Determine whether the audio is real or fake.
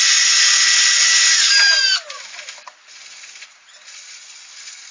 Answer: real